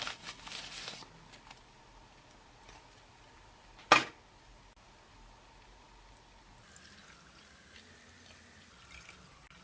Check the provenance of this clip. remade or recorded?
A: recorded